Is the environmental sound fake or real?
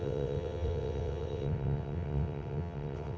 fake